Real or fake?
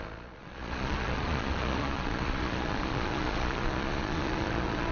fake